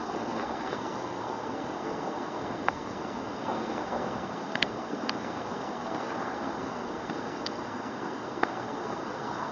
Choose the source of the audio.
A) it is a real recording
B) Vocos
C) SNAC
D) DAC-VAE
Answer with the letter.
C